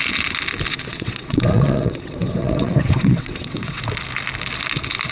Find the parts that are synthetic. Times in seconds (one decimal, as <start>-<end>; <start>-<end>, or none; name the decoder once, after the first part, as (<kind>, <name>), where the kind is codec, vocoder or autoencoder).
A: 0.7-3.8 (vocoder, WaveNeXt)